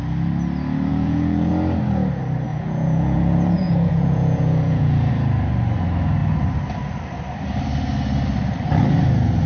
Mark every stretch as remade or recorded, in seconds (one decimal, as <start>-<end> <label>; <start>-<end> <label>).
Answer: 0.0-0.9 recorded; 0.9-1.5 remade; 1.5-2.5 recorded; 2.5-5.1 remade; 5.1-9.5 recorded